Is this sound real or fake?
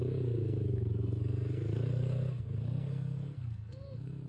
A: fake